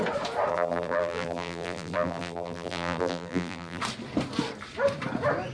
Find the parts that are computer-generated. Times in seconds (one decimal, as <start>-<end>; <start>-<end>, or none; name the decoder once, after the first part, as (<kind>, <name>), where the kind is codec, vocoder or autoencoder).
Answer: 0.5-3.8 (vocoder, BigVGAN v2)